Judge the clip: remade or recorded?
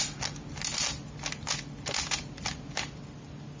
recorded